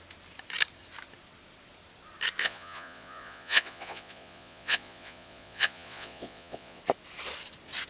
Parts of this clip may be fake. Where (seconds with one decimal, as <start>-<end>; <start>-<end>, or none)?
2.4-6.8